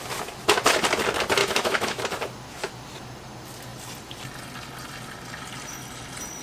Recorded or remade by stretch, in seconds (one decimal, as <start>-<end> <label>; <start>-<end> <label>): 0.0-1.4 recorded; 1.4-2.0 remade; 2.0-6.4 recorded